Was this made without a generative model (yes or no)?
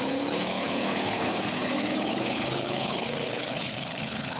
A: no